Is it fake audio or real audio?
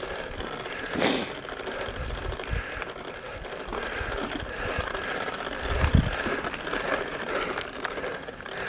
real